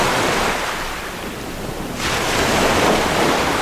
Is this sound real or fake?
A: real